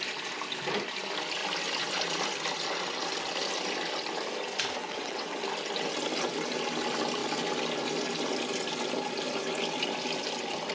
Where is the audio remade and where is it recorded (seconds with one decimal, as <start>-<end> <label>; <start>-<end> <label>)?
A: 0.0-4.8 recorded; 4.8-5.4 remade; 5.4-10.7 recorded